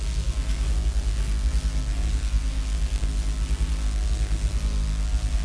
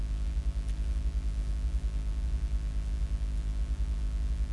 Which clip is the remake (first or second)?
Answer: first